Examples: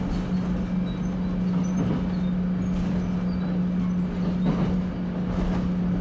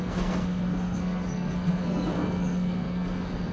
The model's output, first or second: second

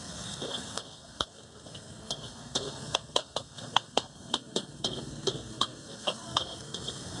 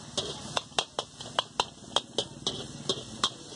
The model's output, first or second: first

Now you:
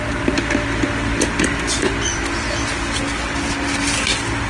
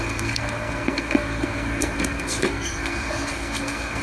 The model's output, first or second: second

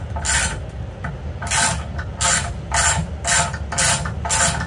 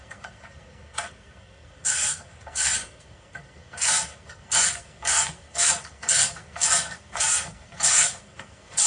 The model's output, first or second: second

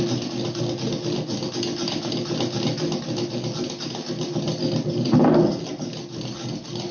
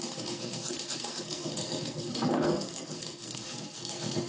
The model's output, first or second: second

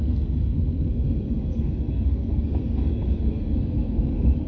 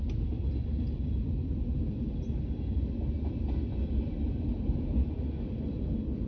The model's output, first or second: first